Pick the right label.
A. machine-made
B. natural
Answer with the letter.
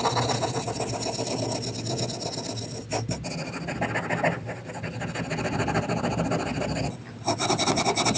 B